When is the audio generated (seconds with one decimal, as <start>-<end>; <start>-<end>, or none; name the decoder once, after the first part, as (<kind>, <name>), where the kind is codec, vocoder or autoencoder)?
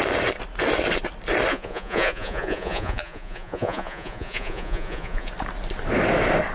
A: 1.5-5.3 (vocoder, Vocos)